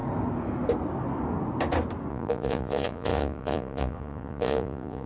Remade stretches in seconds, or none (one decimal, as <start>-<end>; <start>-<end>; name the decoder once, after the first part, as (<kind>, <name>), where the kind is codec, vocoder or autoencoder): 2.1-5.1 (vocoder, Vocos)